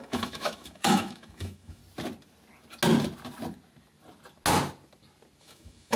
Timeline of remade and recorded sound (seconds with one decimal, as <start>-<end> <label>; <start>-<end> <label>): 0.0-1.8 remade; 1.8-5.4 recorded; 5.4-6.0 remade